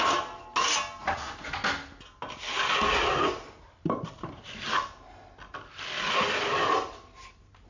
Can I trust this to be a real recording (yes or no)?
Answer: yes